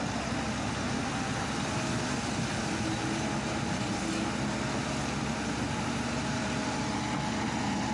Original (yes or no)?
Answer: yes